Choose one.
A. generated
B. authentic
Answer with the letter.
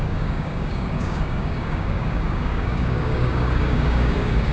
A